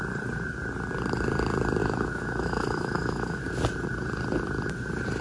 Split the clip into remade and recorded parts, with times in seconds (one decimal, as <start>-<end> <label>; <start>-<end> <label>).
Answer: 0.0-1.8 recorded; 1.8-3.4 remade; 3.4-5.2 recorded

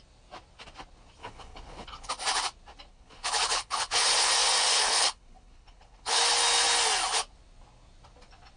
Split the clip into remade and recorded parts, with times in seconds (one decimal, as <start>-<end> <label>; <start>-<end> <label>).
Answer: 0.0-1.2 recorded; 1.2-2.1 remade; 2.1-2.9 recorded; 2.9-4.3 remade; 4.3-4.7 recorded; 4.7-6.2 remade; 6.2-8.6 recorded

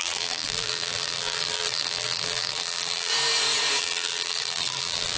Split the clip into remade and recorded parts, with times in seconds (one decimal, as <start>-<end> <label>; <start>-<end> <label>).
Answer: 0.0-3.1 remade; 3.1-3.8 recorded; 3.8-5.2 remade